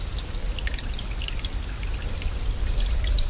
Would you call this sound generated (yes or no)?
no